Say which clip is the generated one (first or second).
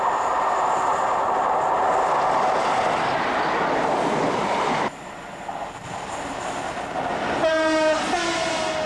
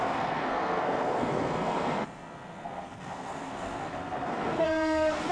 second